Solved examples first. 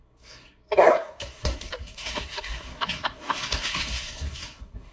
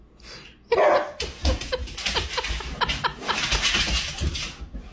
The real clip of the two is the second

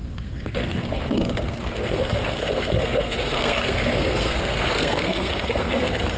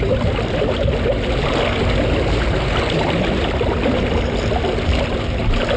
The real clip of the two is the second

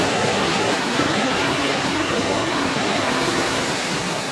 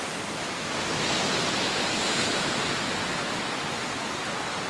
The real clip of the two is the second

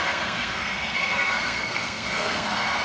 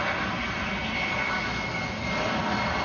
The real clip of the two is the second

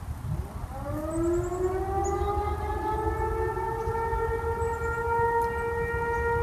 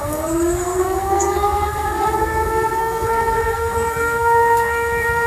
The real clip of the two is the first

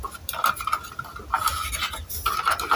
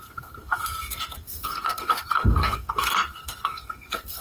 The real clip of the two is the first